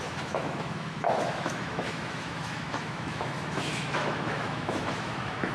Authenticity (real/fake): fake